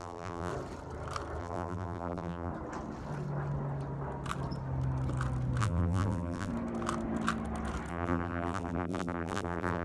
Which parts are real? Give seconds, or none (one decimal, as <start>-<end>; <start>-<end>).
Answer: 0.5-1.4; 2.5-5.6; 6.5-7.9